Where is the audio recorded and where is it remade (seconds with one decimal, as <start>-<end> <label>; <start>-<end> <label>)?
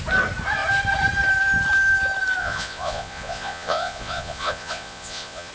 0.0-2.4 recorded; 2.4-5.5 remade